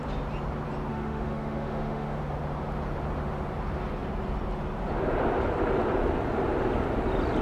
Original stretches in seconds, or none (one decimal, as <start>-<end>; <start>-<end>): 0.0-0.9; 2.2-7.4